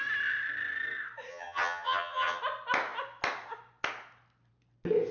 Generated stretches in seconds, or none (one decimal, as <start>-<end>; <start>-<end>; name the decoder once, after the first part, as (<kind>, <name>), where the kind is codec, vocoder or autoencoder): 1.3-2.4 (vocoder, HiFi-GAN)